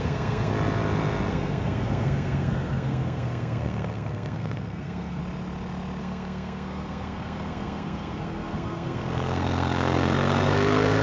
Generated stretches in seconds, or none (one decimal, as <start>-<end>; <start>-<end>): 0.0-0.5; 1.3-5.2; 6.0-11.0